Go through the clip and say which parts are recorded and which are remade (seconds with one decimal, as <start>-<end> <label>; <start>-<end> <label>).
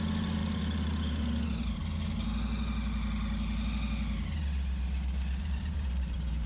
0.0-1.8 remade; 1.8-5.4 recorded; 5.4-6.5 remade